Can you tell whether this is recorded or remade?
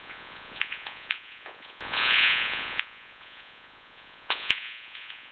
remade